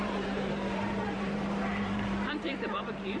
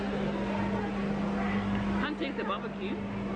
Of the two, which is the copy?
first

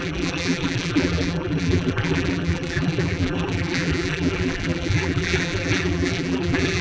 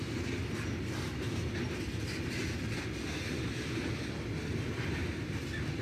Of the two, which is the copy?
first